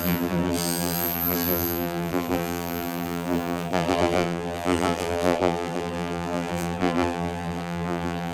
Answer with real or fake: fake